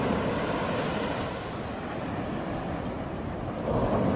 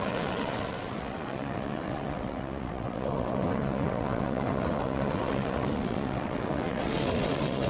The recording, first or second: first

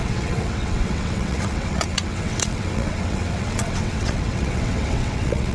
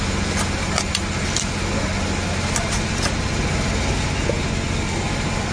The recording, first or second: second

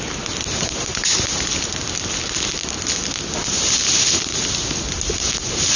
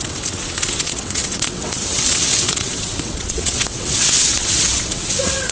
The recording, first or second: first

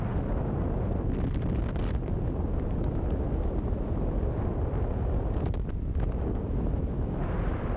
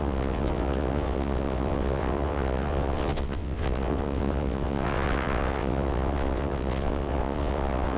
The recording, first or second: first